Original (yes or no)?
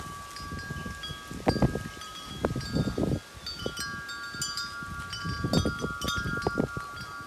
yes